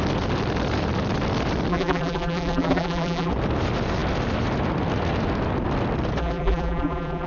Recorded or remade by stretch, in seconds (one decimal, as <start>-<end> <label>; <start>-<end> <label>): 0.0-1.7 recorded; 1.7-3.3 remade; 3.3-6.2 recorded; 6.2-7.3 remade